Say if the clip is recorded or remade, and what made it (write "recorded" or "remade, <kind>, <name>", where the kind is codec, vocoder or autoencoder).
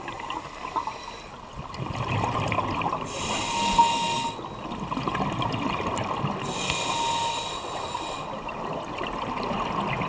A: recorded